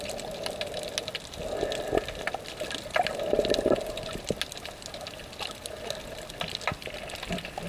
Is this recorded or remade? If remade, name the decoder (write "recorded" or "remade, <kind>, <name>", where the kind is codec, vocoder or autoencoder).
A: recorded